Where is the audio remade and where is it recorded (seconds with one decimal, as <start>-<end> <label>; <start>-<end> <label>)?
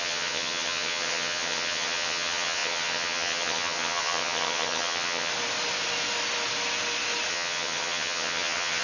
0.0-5.3 remade; 5.3-7.3 recorded; 7.3-8.8 remade